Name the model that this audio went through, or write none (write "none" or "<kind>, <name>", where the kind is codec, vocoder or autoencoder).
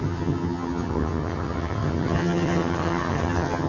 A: vocoder, HiFi-GAN